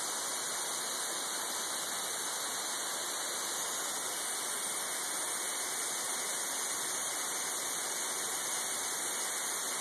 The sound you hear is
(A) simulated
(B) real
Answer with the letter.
B